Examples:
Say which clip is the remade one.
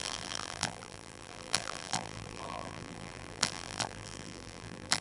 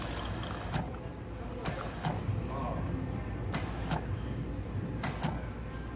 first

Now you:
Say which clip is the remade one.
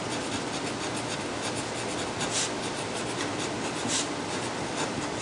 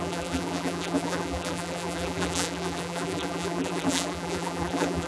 second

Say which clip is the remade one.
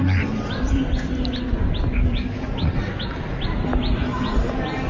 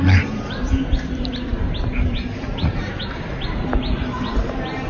second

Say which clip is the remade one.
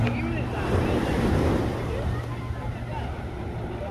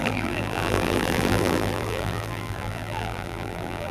second